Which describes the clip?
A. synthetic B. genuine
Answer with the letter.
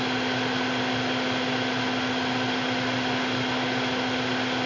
B